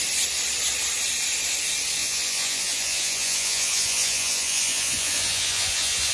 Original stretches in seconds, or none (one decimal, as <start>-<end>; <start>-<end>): 0.0-2.0